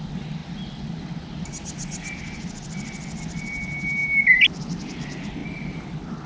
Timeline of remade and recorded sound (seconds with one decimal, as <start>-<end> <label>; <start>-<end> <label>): 0.0-6.3 recorded